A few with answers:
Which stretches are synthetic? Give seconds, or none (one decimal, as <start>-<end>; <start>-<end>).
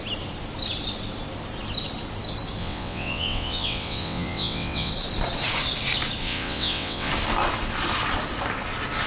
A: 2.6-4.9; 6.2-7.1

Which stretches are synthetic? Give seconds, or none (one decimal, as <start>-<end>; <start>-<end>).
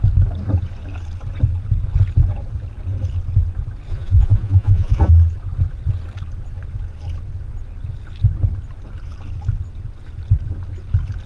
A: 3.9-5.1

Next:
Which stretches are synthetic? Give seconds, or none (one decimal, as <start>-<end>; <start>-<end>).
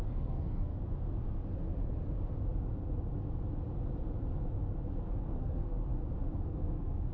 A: 0.0-0.7; 5.0-5.9; 6.5-7.1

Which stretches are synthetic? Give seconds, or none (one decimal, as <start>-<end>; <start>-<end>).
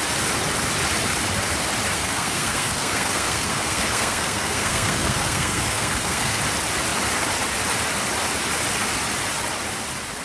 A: 1.9-6.4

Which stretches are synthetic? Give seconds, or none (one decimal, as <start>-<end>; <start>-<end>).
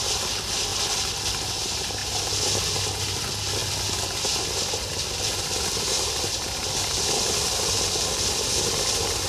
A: none